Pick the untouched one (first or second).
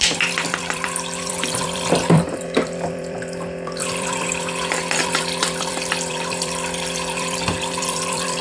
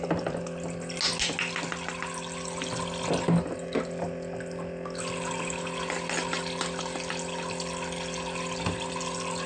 second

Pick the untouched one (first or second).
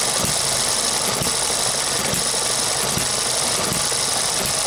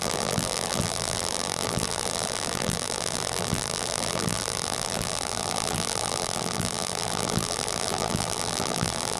first